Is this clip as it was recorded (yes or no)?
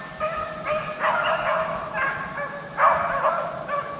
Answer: yes